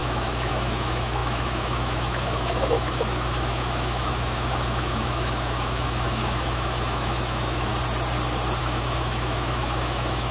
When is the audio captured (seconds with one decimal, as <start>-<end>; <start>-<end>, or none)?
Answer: 7.7-8.6